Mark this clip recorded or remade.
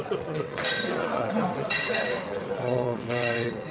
remade